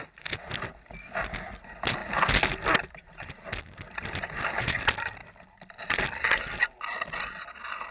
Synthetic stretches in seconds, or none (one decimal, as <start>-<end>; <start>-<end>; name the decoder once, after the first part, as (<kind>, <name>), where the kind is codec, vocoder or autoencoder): none